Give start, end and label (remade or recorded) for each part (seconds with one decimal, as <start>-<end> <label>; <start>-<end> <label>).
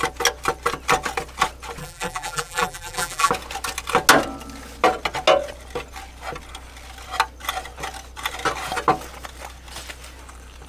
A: 0.0-1.8 recorded; 1.8-3.3 remade; 3.3-10.7 recorded